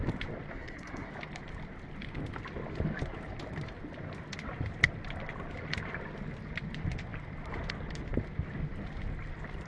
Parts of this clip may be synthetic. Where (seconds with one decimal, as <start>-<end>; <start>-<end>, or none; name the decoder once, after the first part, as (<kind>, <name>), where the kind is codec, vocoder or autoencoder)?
0.5-1.1 (codec, SNAC)